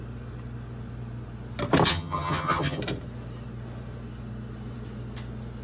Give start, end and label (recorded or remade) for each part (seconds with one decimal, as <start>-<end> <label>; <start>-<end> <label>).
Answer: 0.0-1.9 recorded; 1.9-2.8 remade; 2.8-5.6 recorded